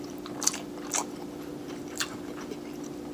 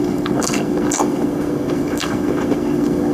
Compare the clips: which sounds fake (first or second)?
second